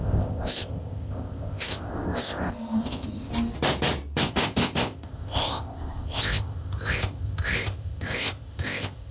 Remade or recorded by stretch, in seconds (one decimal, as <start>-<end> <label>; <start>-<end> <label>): 0.0-3.3 remade; 3.3-4.2 recorded; 4.2-9.1 remade